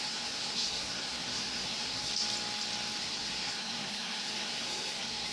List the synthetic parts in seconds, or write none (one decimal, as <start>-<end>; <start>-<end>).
0.0-2.1; 3.0-5.3